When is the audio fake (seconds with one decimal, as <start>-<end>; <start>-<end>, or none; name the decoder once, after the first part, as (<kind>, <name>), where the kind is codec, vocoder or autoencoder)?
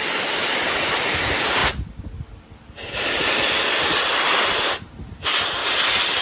0.0-0.9 (vocoder, BigVGAN v2); 5.6-6.2